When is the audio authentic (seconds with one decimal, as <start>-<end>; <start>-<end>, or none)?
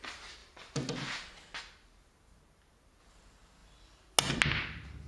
0.0-5.1